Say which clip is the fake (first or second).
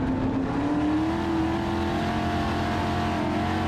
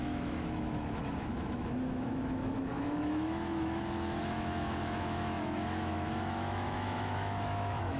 second